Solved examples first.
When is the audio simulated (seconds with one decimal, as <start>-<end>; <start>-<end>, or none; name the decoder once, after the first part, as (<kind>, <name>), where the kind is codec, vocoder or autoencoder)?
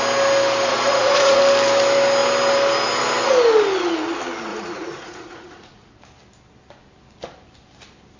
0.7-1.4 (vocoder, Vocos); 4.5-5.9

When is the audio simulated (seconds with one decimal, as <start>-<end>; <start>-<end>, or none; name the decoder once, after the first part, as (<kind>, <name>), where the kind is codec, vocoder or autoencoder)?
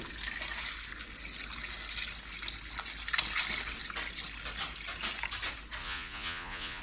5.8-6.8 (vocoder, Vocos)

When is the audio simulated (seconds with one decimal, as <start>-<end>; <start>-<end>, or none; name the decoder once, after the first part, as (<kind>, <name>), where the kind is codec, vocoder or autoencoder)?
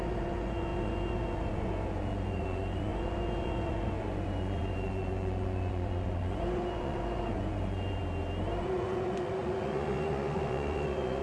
0.0-8.0 (vocoder, Vocos); 8.6-11.2